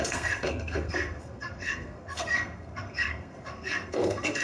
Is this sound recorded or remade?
remade